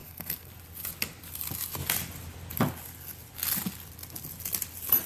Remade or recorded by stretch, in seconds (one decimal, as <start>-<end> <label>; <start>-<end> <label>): 0.0-0.5 remade; 0.5-5.1 recorded